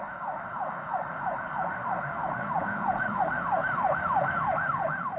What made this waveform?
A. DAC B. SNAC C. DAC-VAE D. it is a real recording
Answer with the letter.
C